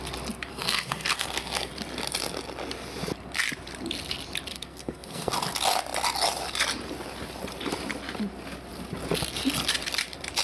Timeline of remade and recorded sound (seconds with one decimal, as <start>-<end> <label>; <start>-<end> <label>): 0.0-0.5 recorded; 0.5-1.7 remade; 1.7-4.5 recorded; 4.5-5.3 remade; 5.3-10.4 recorded